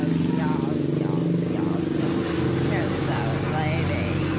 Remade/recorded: recorded